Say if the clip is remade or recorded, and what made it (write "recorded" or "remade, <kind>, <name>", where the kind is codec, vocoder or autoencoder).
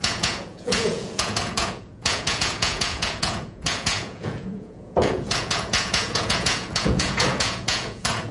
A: remade, vocoder, Vocos